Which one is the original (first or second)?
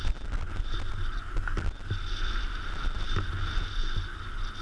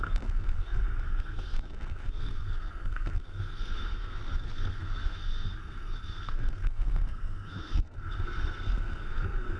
first